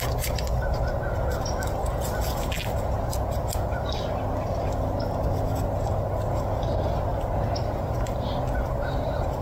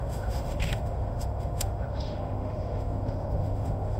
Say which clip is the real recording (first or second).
first